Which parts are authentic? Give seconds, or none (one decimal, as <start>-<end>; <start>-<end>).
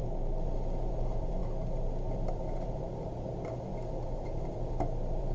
0.0-0.9; 1.4-2.1; 3.7-4.5